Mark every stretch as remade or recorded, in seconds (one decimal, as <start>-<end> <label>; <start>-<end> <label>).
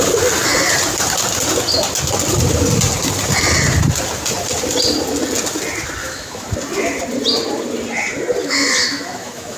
0.0-6.0 recorded; 6.0-6.5 remade; 6.5-8.4 recorded; 8.4-9.6 remade